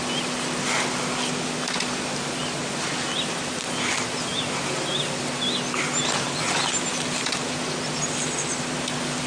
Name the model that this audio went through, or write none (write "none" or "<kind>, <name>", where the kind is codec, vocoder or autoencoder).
none